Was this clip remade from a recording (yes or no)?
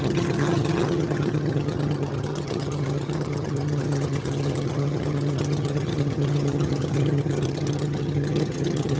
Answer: yes